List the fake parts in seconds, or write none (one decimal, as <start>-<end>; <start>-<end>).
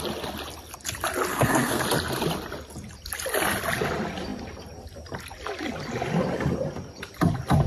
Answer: 1.3-1.8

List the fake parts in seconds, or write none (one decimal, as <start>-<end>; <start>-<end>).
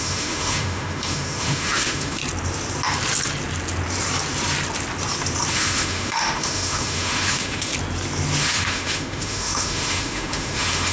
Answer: 0.0-2.2; 5.5-7.7; 8.4-10.9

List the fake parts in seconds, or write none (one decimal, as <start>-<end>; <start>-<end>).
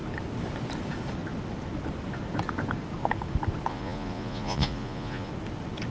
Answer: 3.7-5.3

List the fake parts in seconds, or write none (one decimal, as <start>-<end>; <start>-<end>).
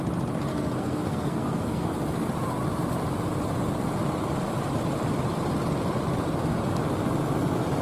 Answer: 0.5-1.9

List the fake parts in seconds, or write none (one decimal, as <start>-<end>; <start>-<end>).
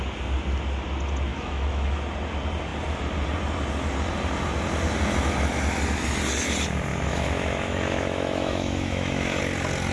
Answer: 1.3-2.0; 6.9-9.4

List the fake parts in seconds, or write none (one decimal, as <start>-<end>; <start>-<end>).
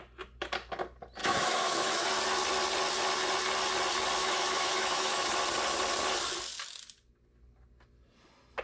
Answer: 1.2-2.2; 4.2-5.3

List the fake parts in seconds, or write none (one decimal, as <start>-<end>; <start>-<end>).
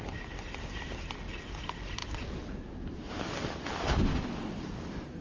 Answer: none